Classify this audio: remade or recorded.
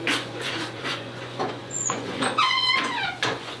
remade